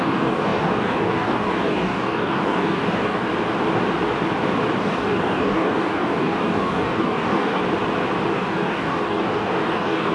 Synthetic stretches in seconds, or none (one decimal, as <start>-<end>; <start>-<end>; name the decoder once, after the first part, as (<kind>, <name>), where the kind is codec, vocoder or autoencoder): 0.0-3.3 (codec, DAC); 4.8-7.6; 8.3-10.1